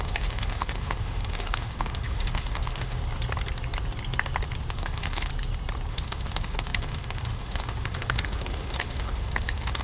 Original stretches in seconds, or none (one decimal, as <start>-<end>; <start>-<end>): 3.0-4.7; 5.3-5.9